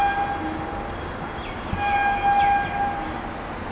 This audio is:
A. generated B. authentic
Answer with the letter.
B